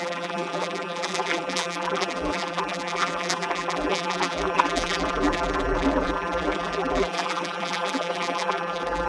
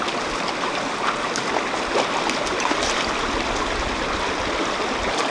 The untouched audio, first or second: second